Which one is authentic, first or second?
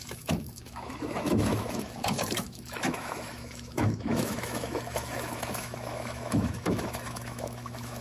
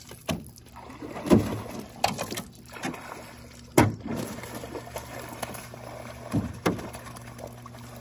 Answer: second